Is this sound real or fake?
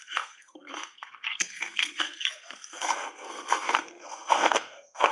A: fake